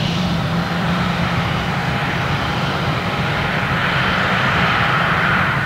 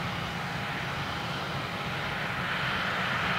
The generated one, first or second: first